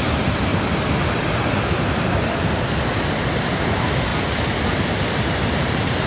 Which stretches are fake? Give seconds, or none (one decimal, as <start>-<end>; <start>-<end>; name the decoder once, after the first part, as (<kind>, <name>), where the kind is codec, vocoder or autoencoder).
0.0-0.5 (vocoder, BigVGAN v2); 3.5-4.1; 5.6-6.1